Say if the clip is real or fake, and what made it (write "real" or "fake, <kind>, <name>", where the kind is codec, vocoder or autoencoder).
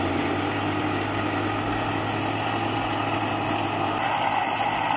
real